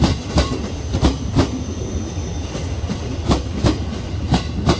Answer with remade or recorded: recorded